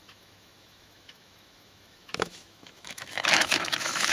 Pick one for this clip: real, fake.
fake